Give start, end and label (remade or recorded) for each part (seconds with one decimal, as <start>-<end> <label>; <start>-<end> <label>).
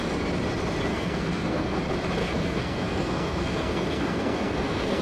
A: 0.0-0.9 recorded; 0.9-1.8 remade; 1.8-2.2 recorded; 2.2-5.0 remade